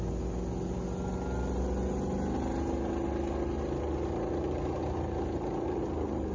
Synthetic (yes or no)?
no